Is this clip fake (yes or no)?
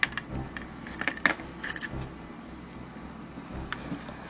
no